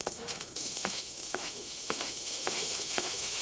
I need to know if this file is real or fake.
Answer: fake